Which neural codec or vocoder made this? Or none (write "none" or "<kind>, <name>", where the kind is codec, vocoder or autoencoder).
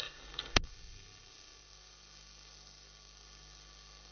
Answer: codec, SNAC